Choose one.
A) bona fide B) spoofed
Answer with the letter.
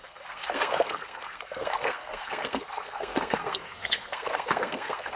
B